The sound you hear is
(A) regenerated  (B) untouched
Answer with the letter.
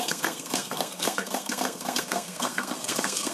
A